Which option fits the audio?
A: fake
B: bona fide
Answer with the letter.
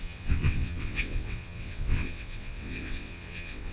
A